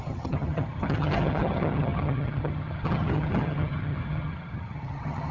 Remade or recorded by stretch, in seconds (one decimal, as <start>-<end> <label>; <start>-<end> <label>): 0.0-5.3 remade